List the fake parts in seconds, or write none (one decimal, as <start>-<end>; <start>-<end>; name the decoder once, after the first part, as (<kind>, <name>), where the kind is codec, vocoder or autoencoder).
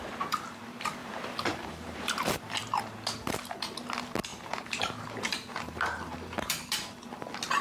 1.0-2.8 (vocoder, BigVGAN v2); 4.3-6.9